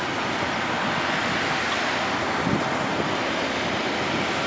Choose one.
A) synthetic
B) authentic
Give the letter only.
B